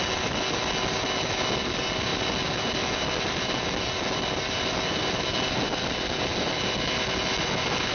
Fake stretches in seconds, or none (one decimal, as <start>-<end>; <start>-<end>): none